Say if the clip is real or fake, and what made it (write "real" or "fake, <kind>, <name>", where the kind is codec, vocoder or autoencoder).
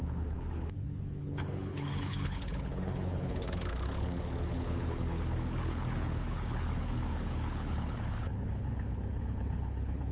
fake, codec, HILCodec